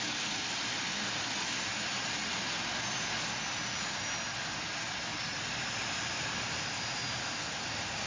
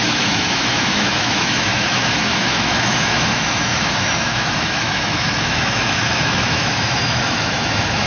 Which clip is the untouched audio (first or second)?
first